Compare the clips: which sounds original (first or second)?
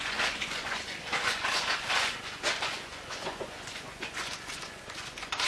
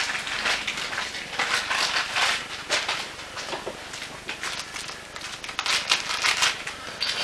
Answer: second